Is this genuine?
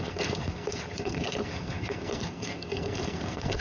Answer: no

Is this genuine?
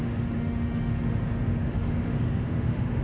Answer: no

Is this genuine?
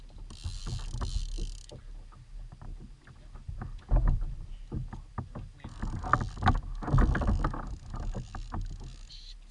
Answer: yes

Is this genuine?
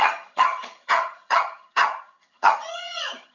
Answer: no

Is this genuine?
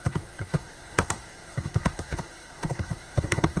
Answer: no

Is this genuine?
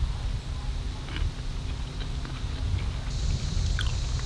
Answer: yes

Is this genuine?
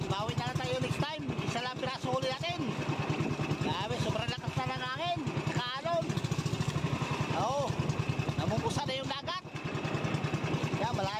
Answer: yes